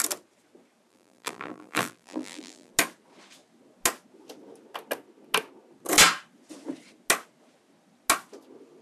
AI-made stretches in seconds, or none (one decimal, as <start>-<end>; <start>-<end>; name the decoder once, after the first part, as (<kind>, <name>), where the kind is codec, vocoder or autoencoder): 0.9-2.7 (vocoder, BigVGAN v2)